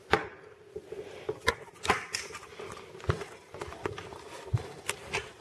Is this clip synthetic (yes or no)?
no